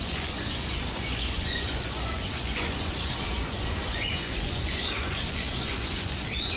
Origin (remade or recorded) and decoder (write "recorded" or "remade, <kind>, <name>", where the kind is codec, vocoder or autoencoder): remade, vocoder, Vocos